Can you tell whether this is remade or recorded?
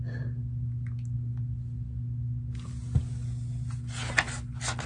recorded